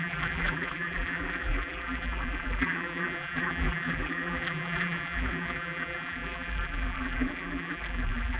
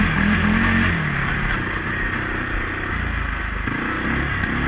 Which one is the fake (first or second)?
first